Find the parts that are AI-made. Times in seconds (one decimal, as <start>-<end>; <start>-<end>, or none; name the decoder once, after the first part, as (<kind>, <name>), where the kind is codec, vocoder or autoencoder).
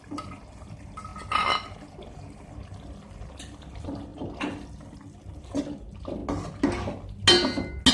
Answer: 0.0-1.1 (vocoder, BigVGAN v2); 2.1-6.2